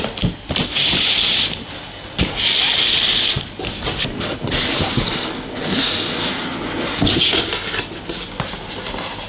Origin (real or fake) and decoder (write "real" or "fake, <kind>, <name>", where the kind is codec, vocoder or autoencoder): real